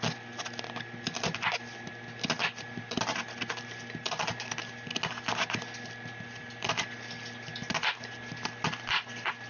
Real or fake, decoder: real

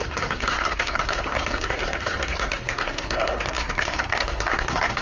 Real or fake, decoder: fake, codec, SNAC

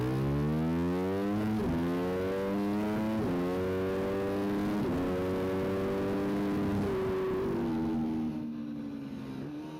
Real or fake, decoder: real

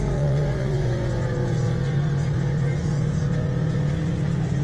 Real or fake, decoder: fake, vocoder, Vocos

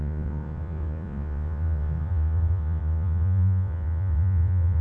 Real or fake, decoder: fake, vocoder, Vocos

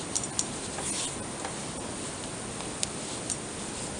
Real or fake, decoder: real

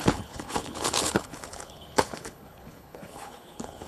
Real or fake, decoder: fake, codec, HILCodec